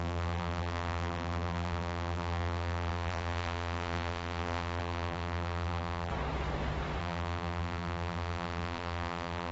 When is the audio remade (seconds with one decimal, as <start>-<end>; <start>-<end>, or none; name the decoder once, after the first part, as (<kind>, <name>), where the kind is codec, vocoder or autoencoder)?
0.0-6.1 (vocoder, BigVGAN v2); 7.0-9.5